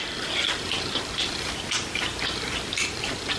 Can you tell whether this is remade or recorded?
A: remade